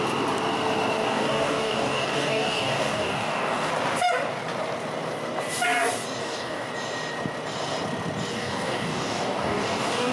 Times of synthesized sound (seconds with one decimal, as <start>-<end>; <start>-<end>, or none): 1.0-3.7; 6.2-6.7; 8.3-10.1